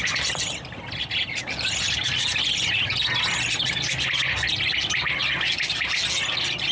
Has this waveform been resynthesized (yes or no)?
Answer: no